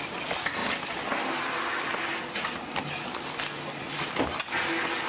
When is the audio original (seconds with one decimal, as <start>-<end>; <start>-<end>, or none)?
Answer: 0.0-5.1